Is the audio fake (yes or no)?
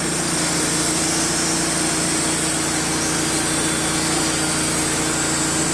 no